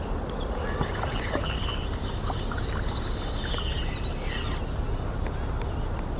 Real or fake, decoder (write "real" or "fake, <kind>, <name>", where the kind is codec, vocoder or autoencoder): real